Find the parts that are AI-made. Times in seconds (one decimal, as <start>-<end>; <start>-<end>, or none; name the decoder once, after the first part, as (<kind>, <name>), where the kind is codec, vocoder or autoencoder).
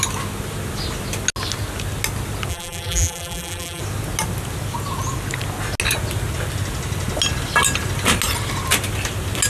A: 2.5-3.8 (vocoder, BigVGAN v2)